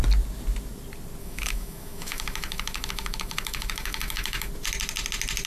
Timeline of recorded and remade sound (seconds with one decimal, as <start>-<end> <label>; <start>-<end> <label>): 0.0-1.2 recorded; 1.2-4.5 remade; 4.5-5.5 recorded